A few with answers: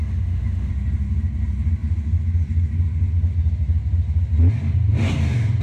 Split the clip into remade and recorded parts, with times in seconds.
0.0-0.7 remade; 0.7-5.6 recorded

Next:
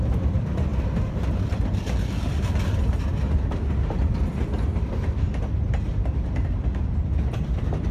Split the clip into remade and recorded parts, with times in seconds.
0.0-3.1 remade; 3.1-5.9 recorded; 5.9-7.9 remade

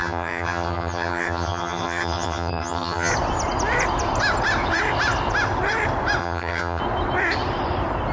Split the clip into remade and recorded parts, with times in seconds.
0.0-3.1 remade; 3.1-6.2 recorded; 6.2-6.8 remade; 6.8-8.1 recorded

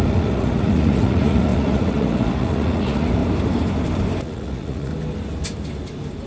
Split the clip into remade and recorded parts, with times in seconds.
0.0-3.2 remade; 3.2-4.2 recorded; 4.2-4.9 remade; 4.9-6.3 recorded